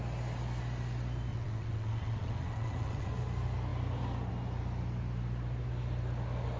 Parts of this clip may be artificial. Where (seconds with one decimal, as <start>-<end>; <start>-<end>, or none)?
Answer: 1.3-3.1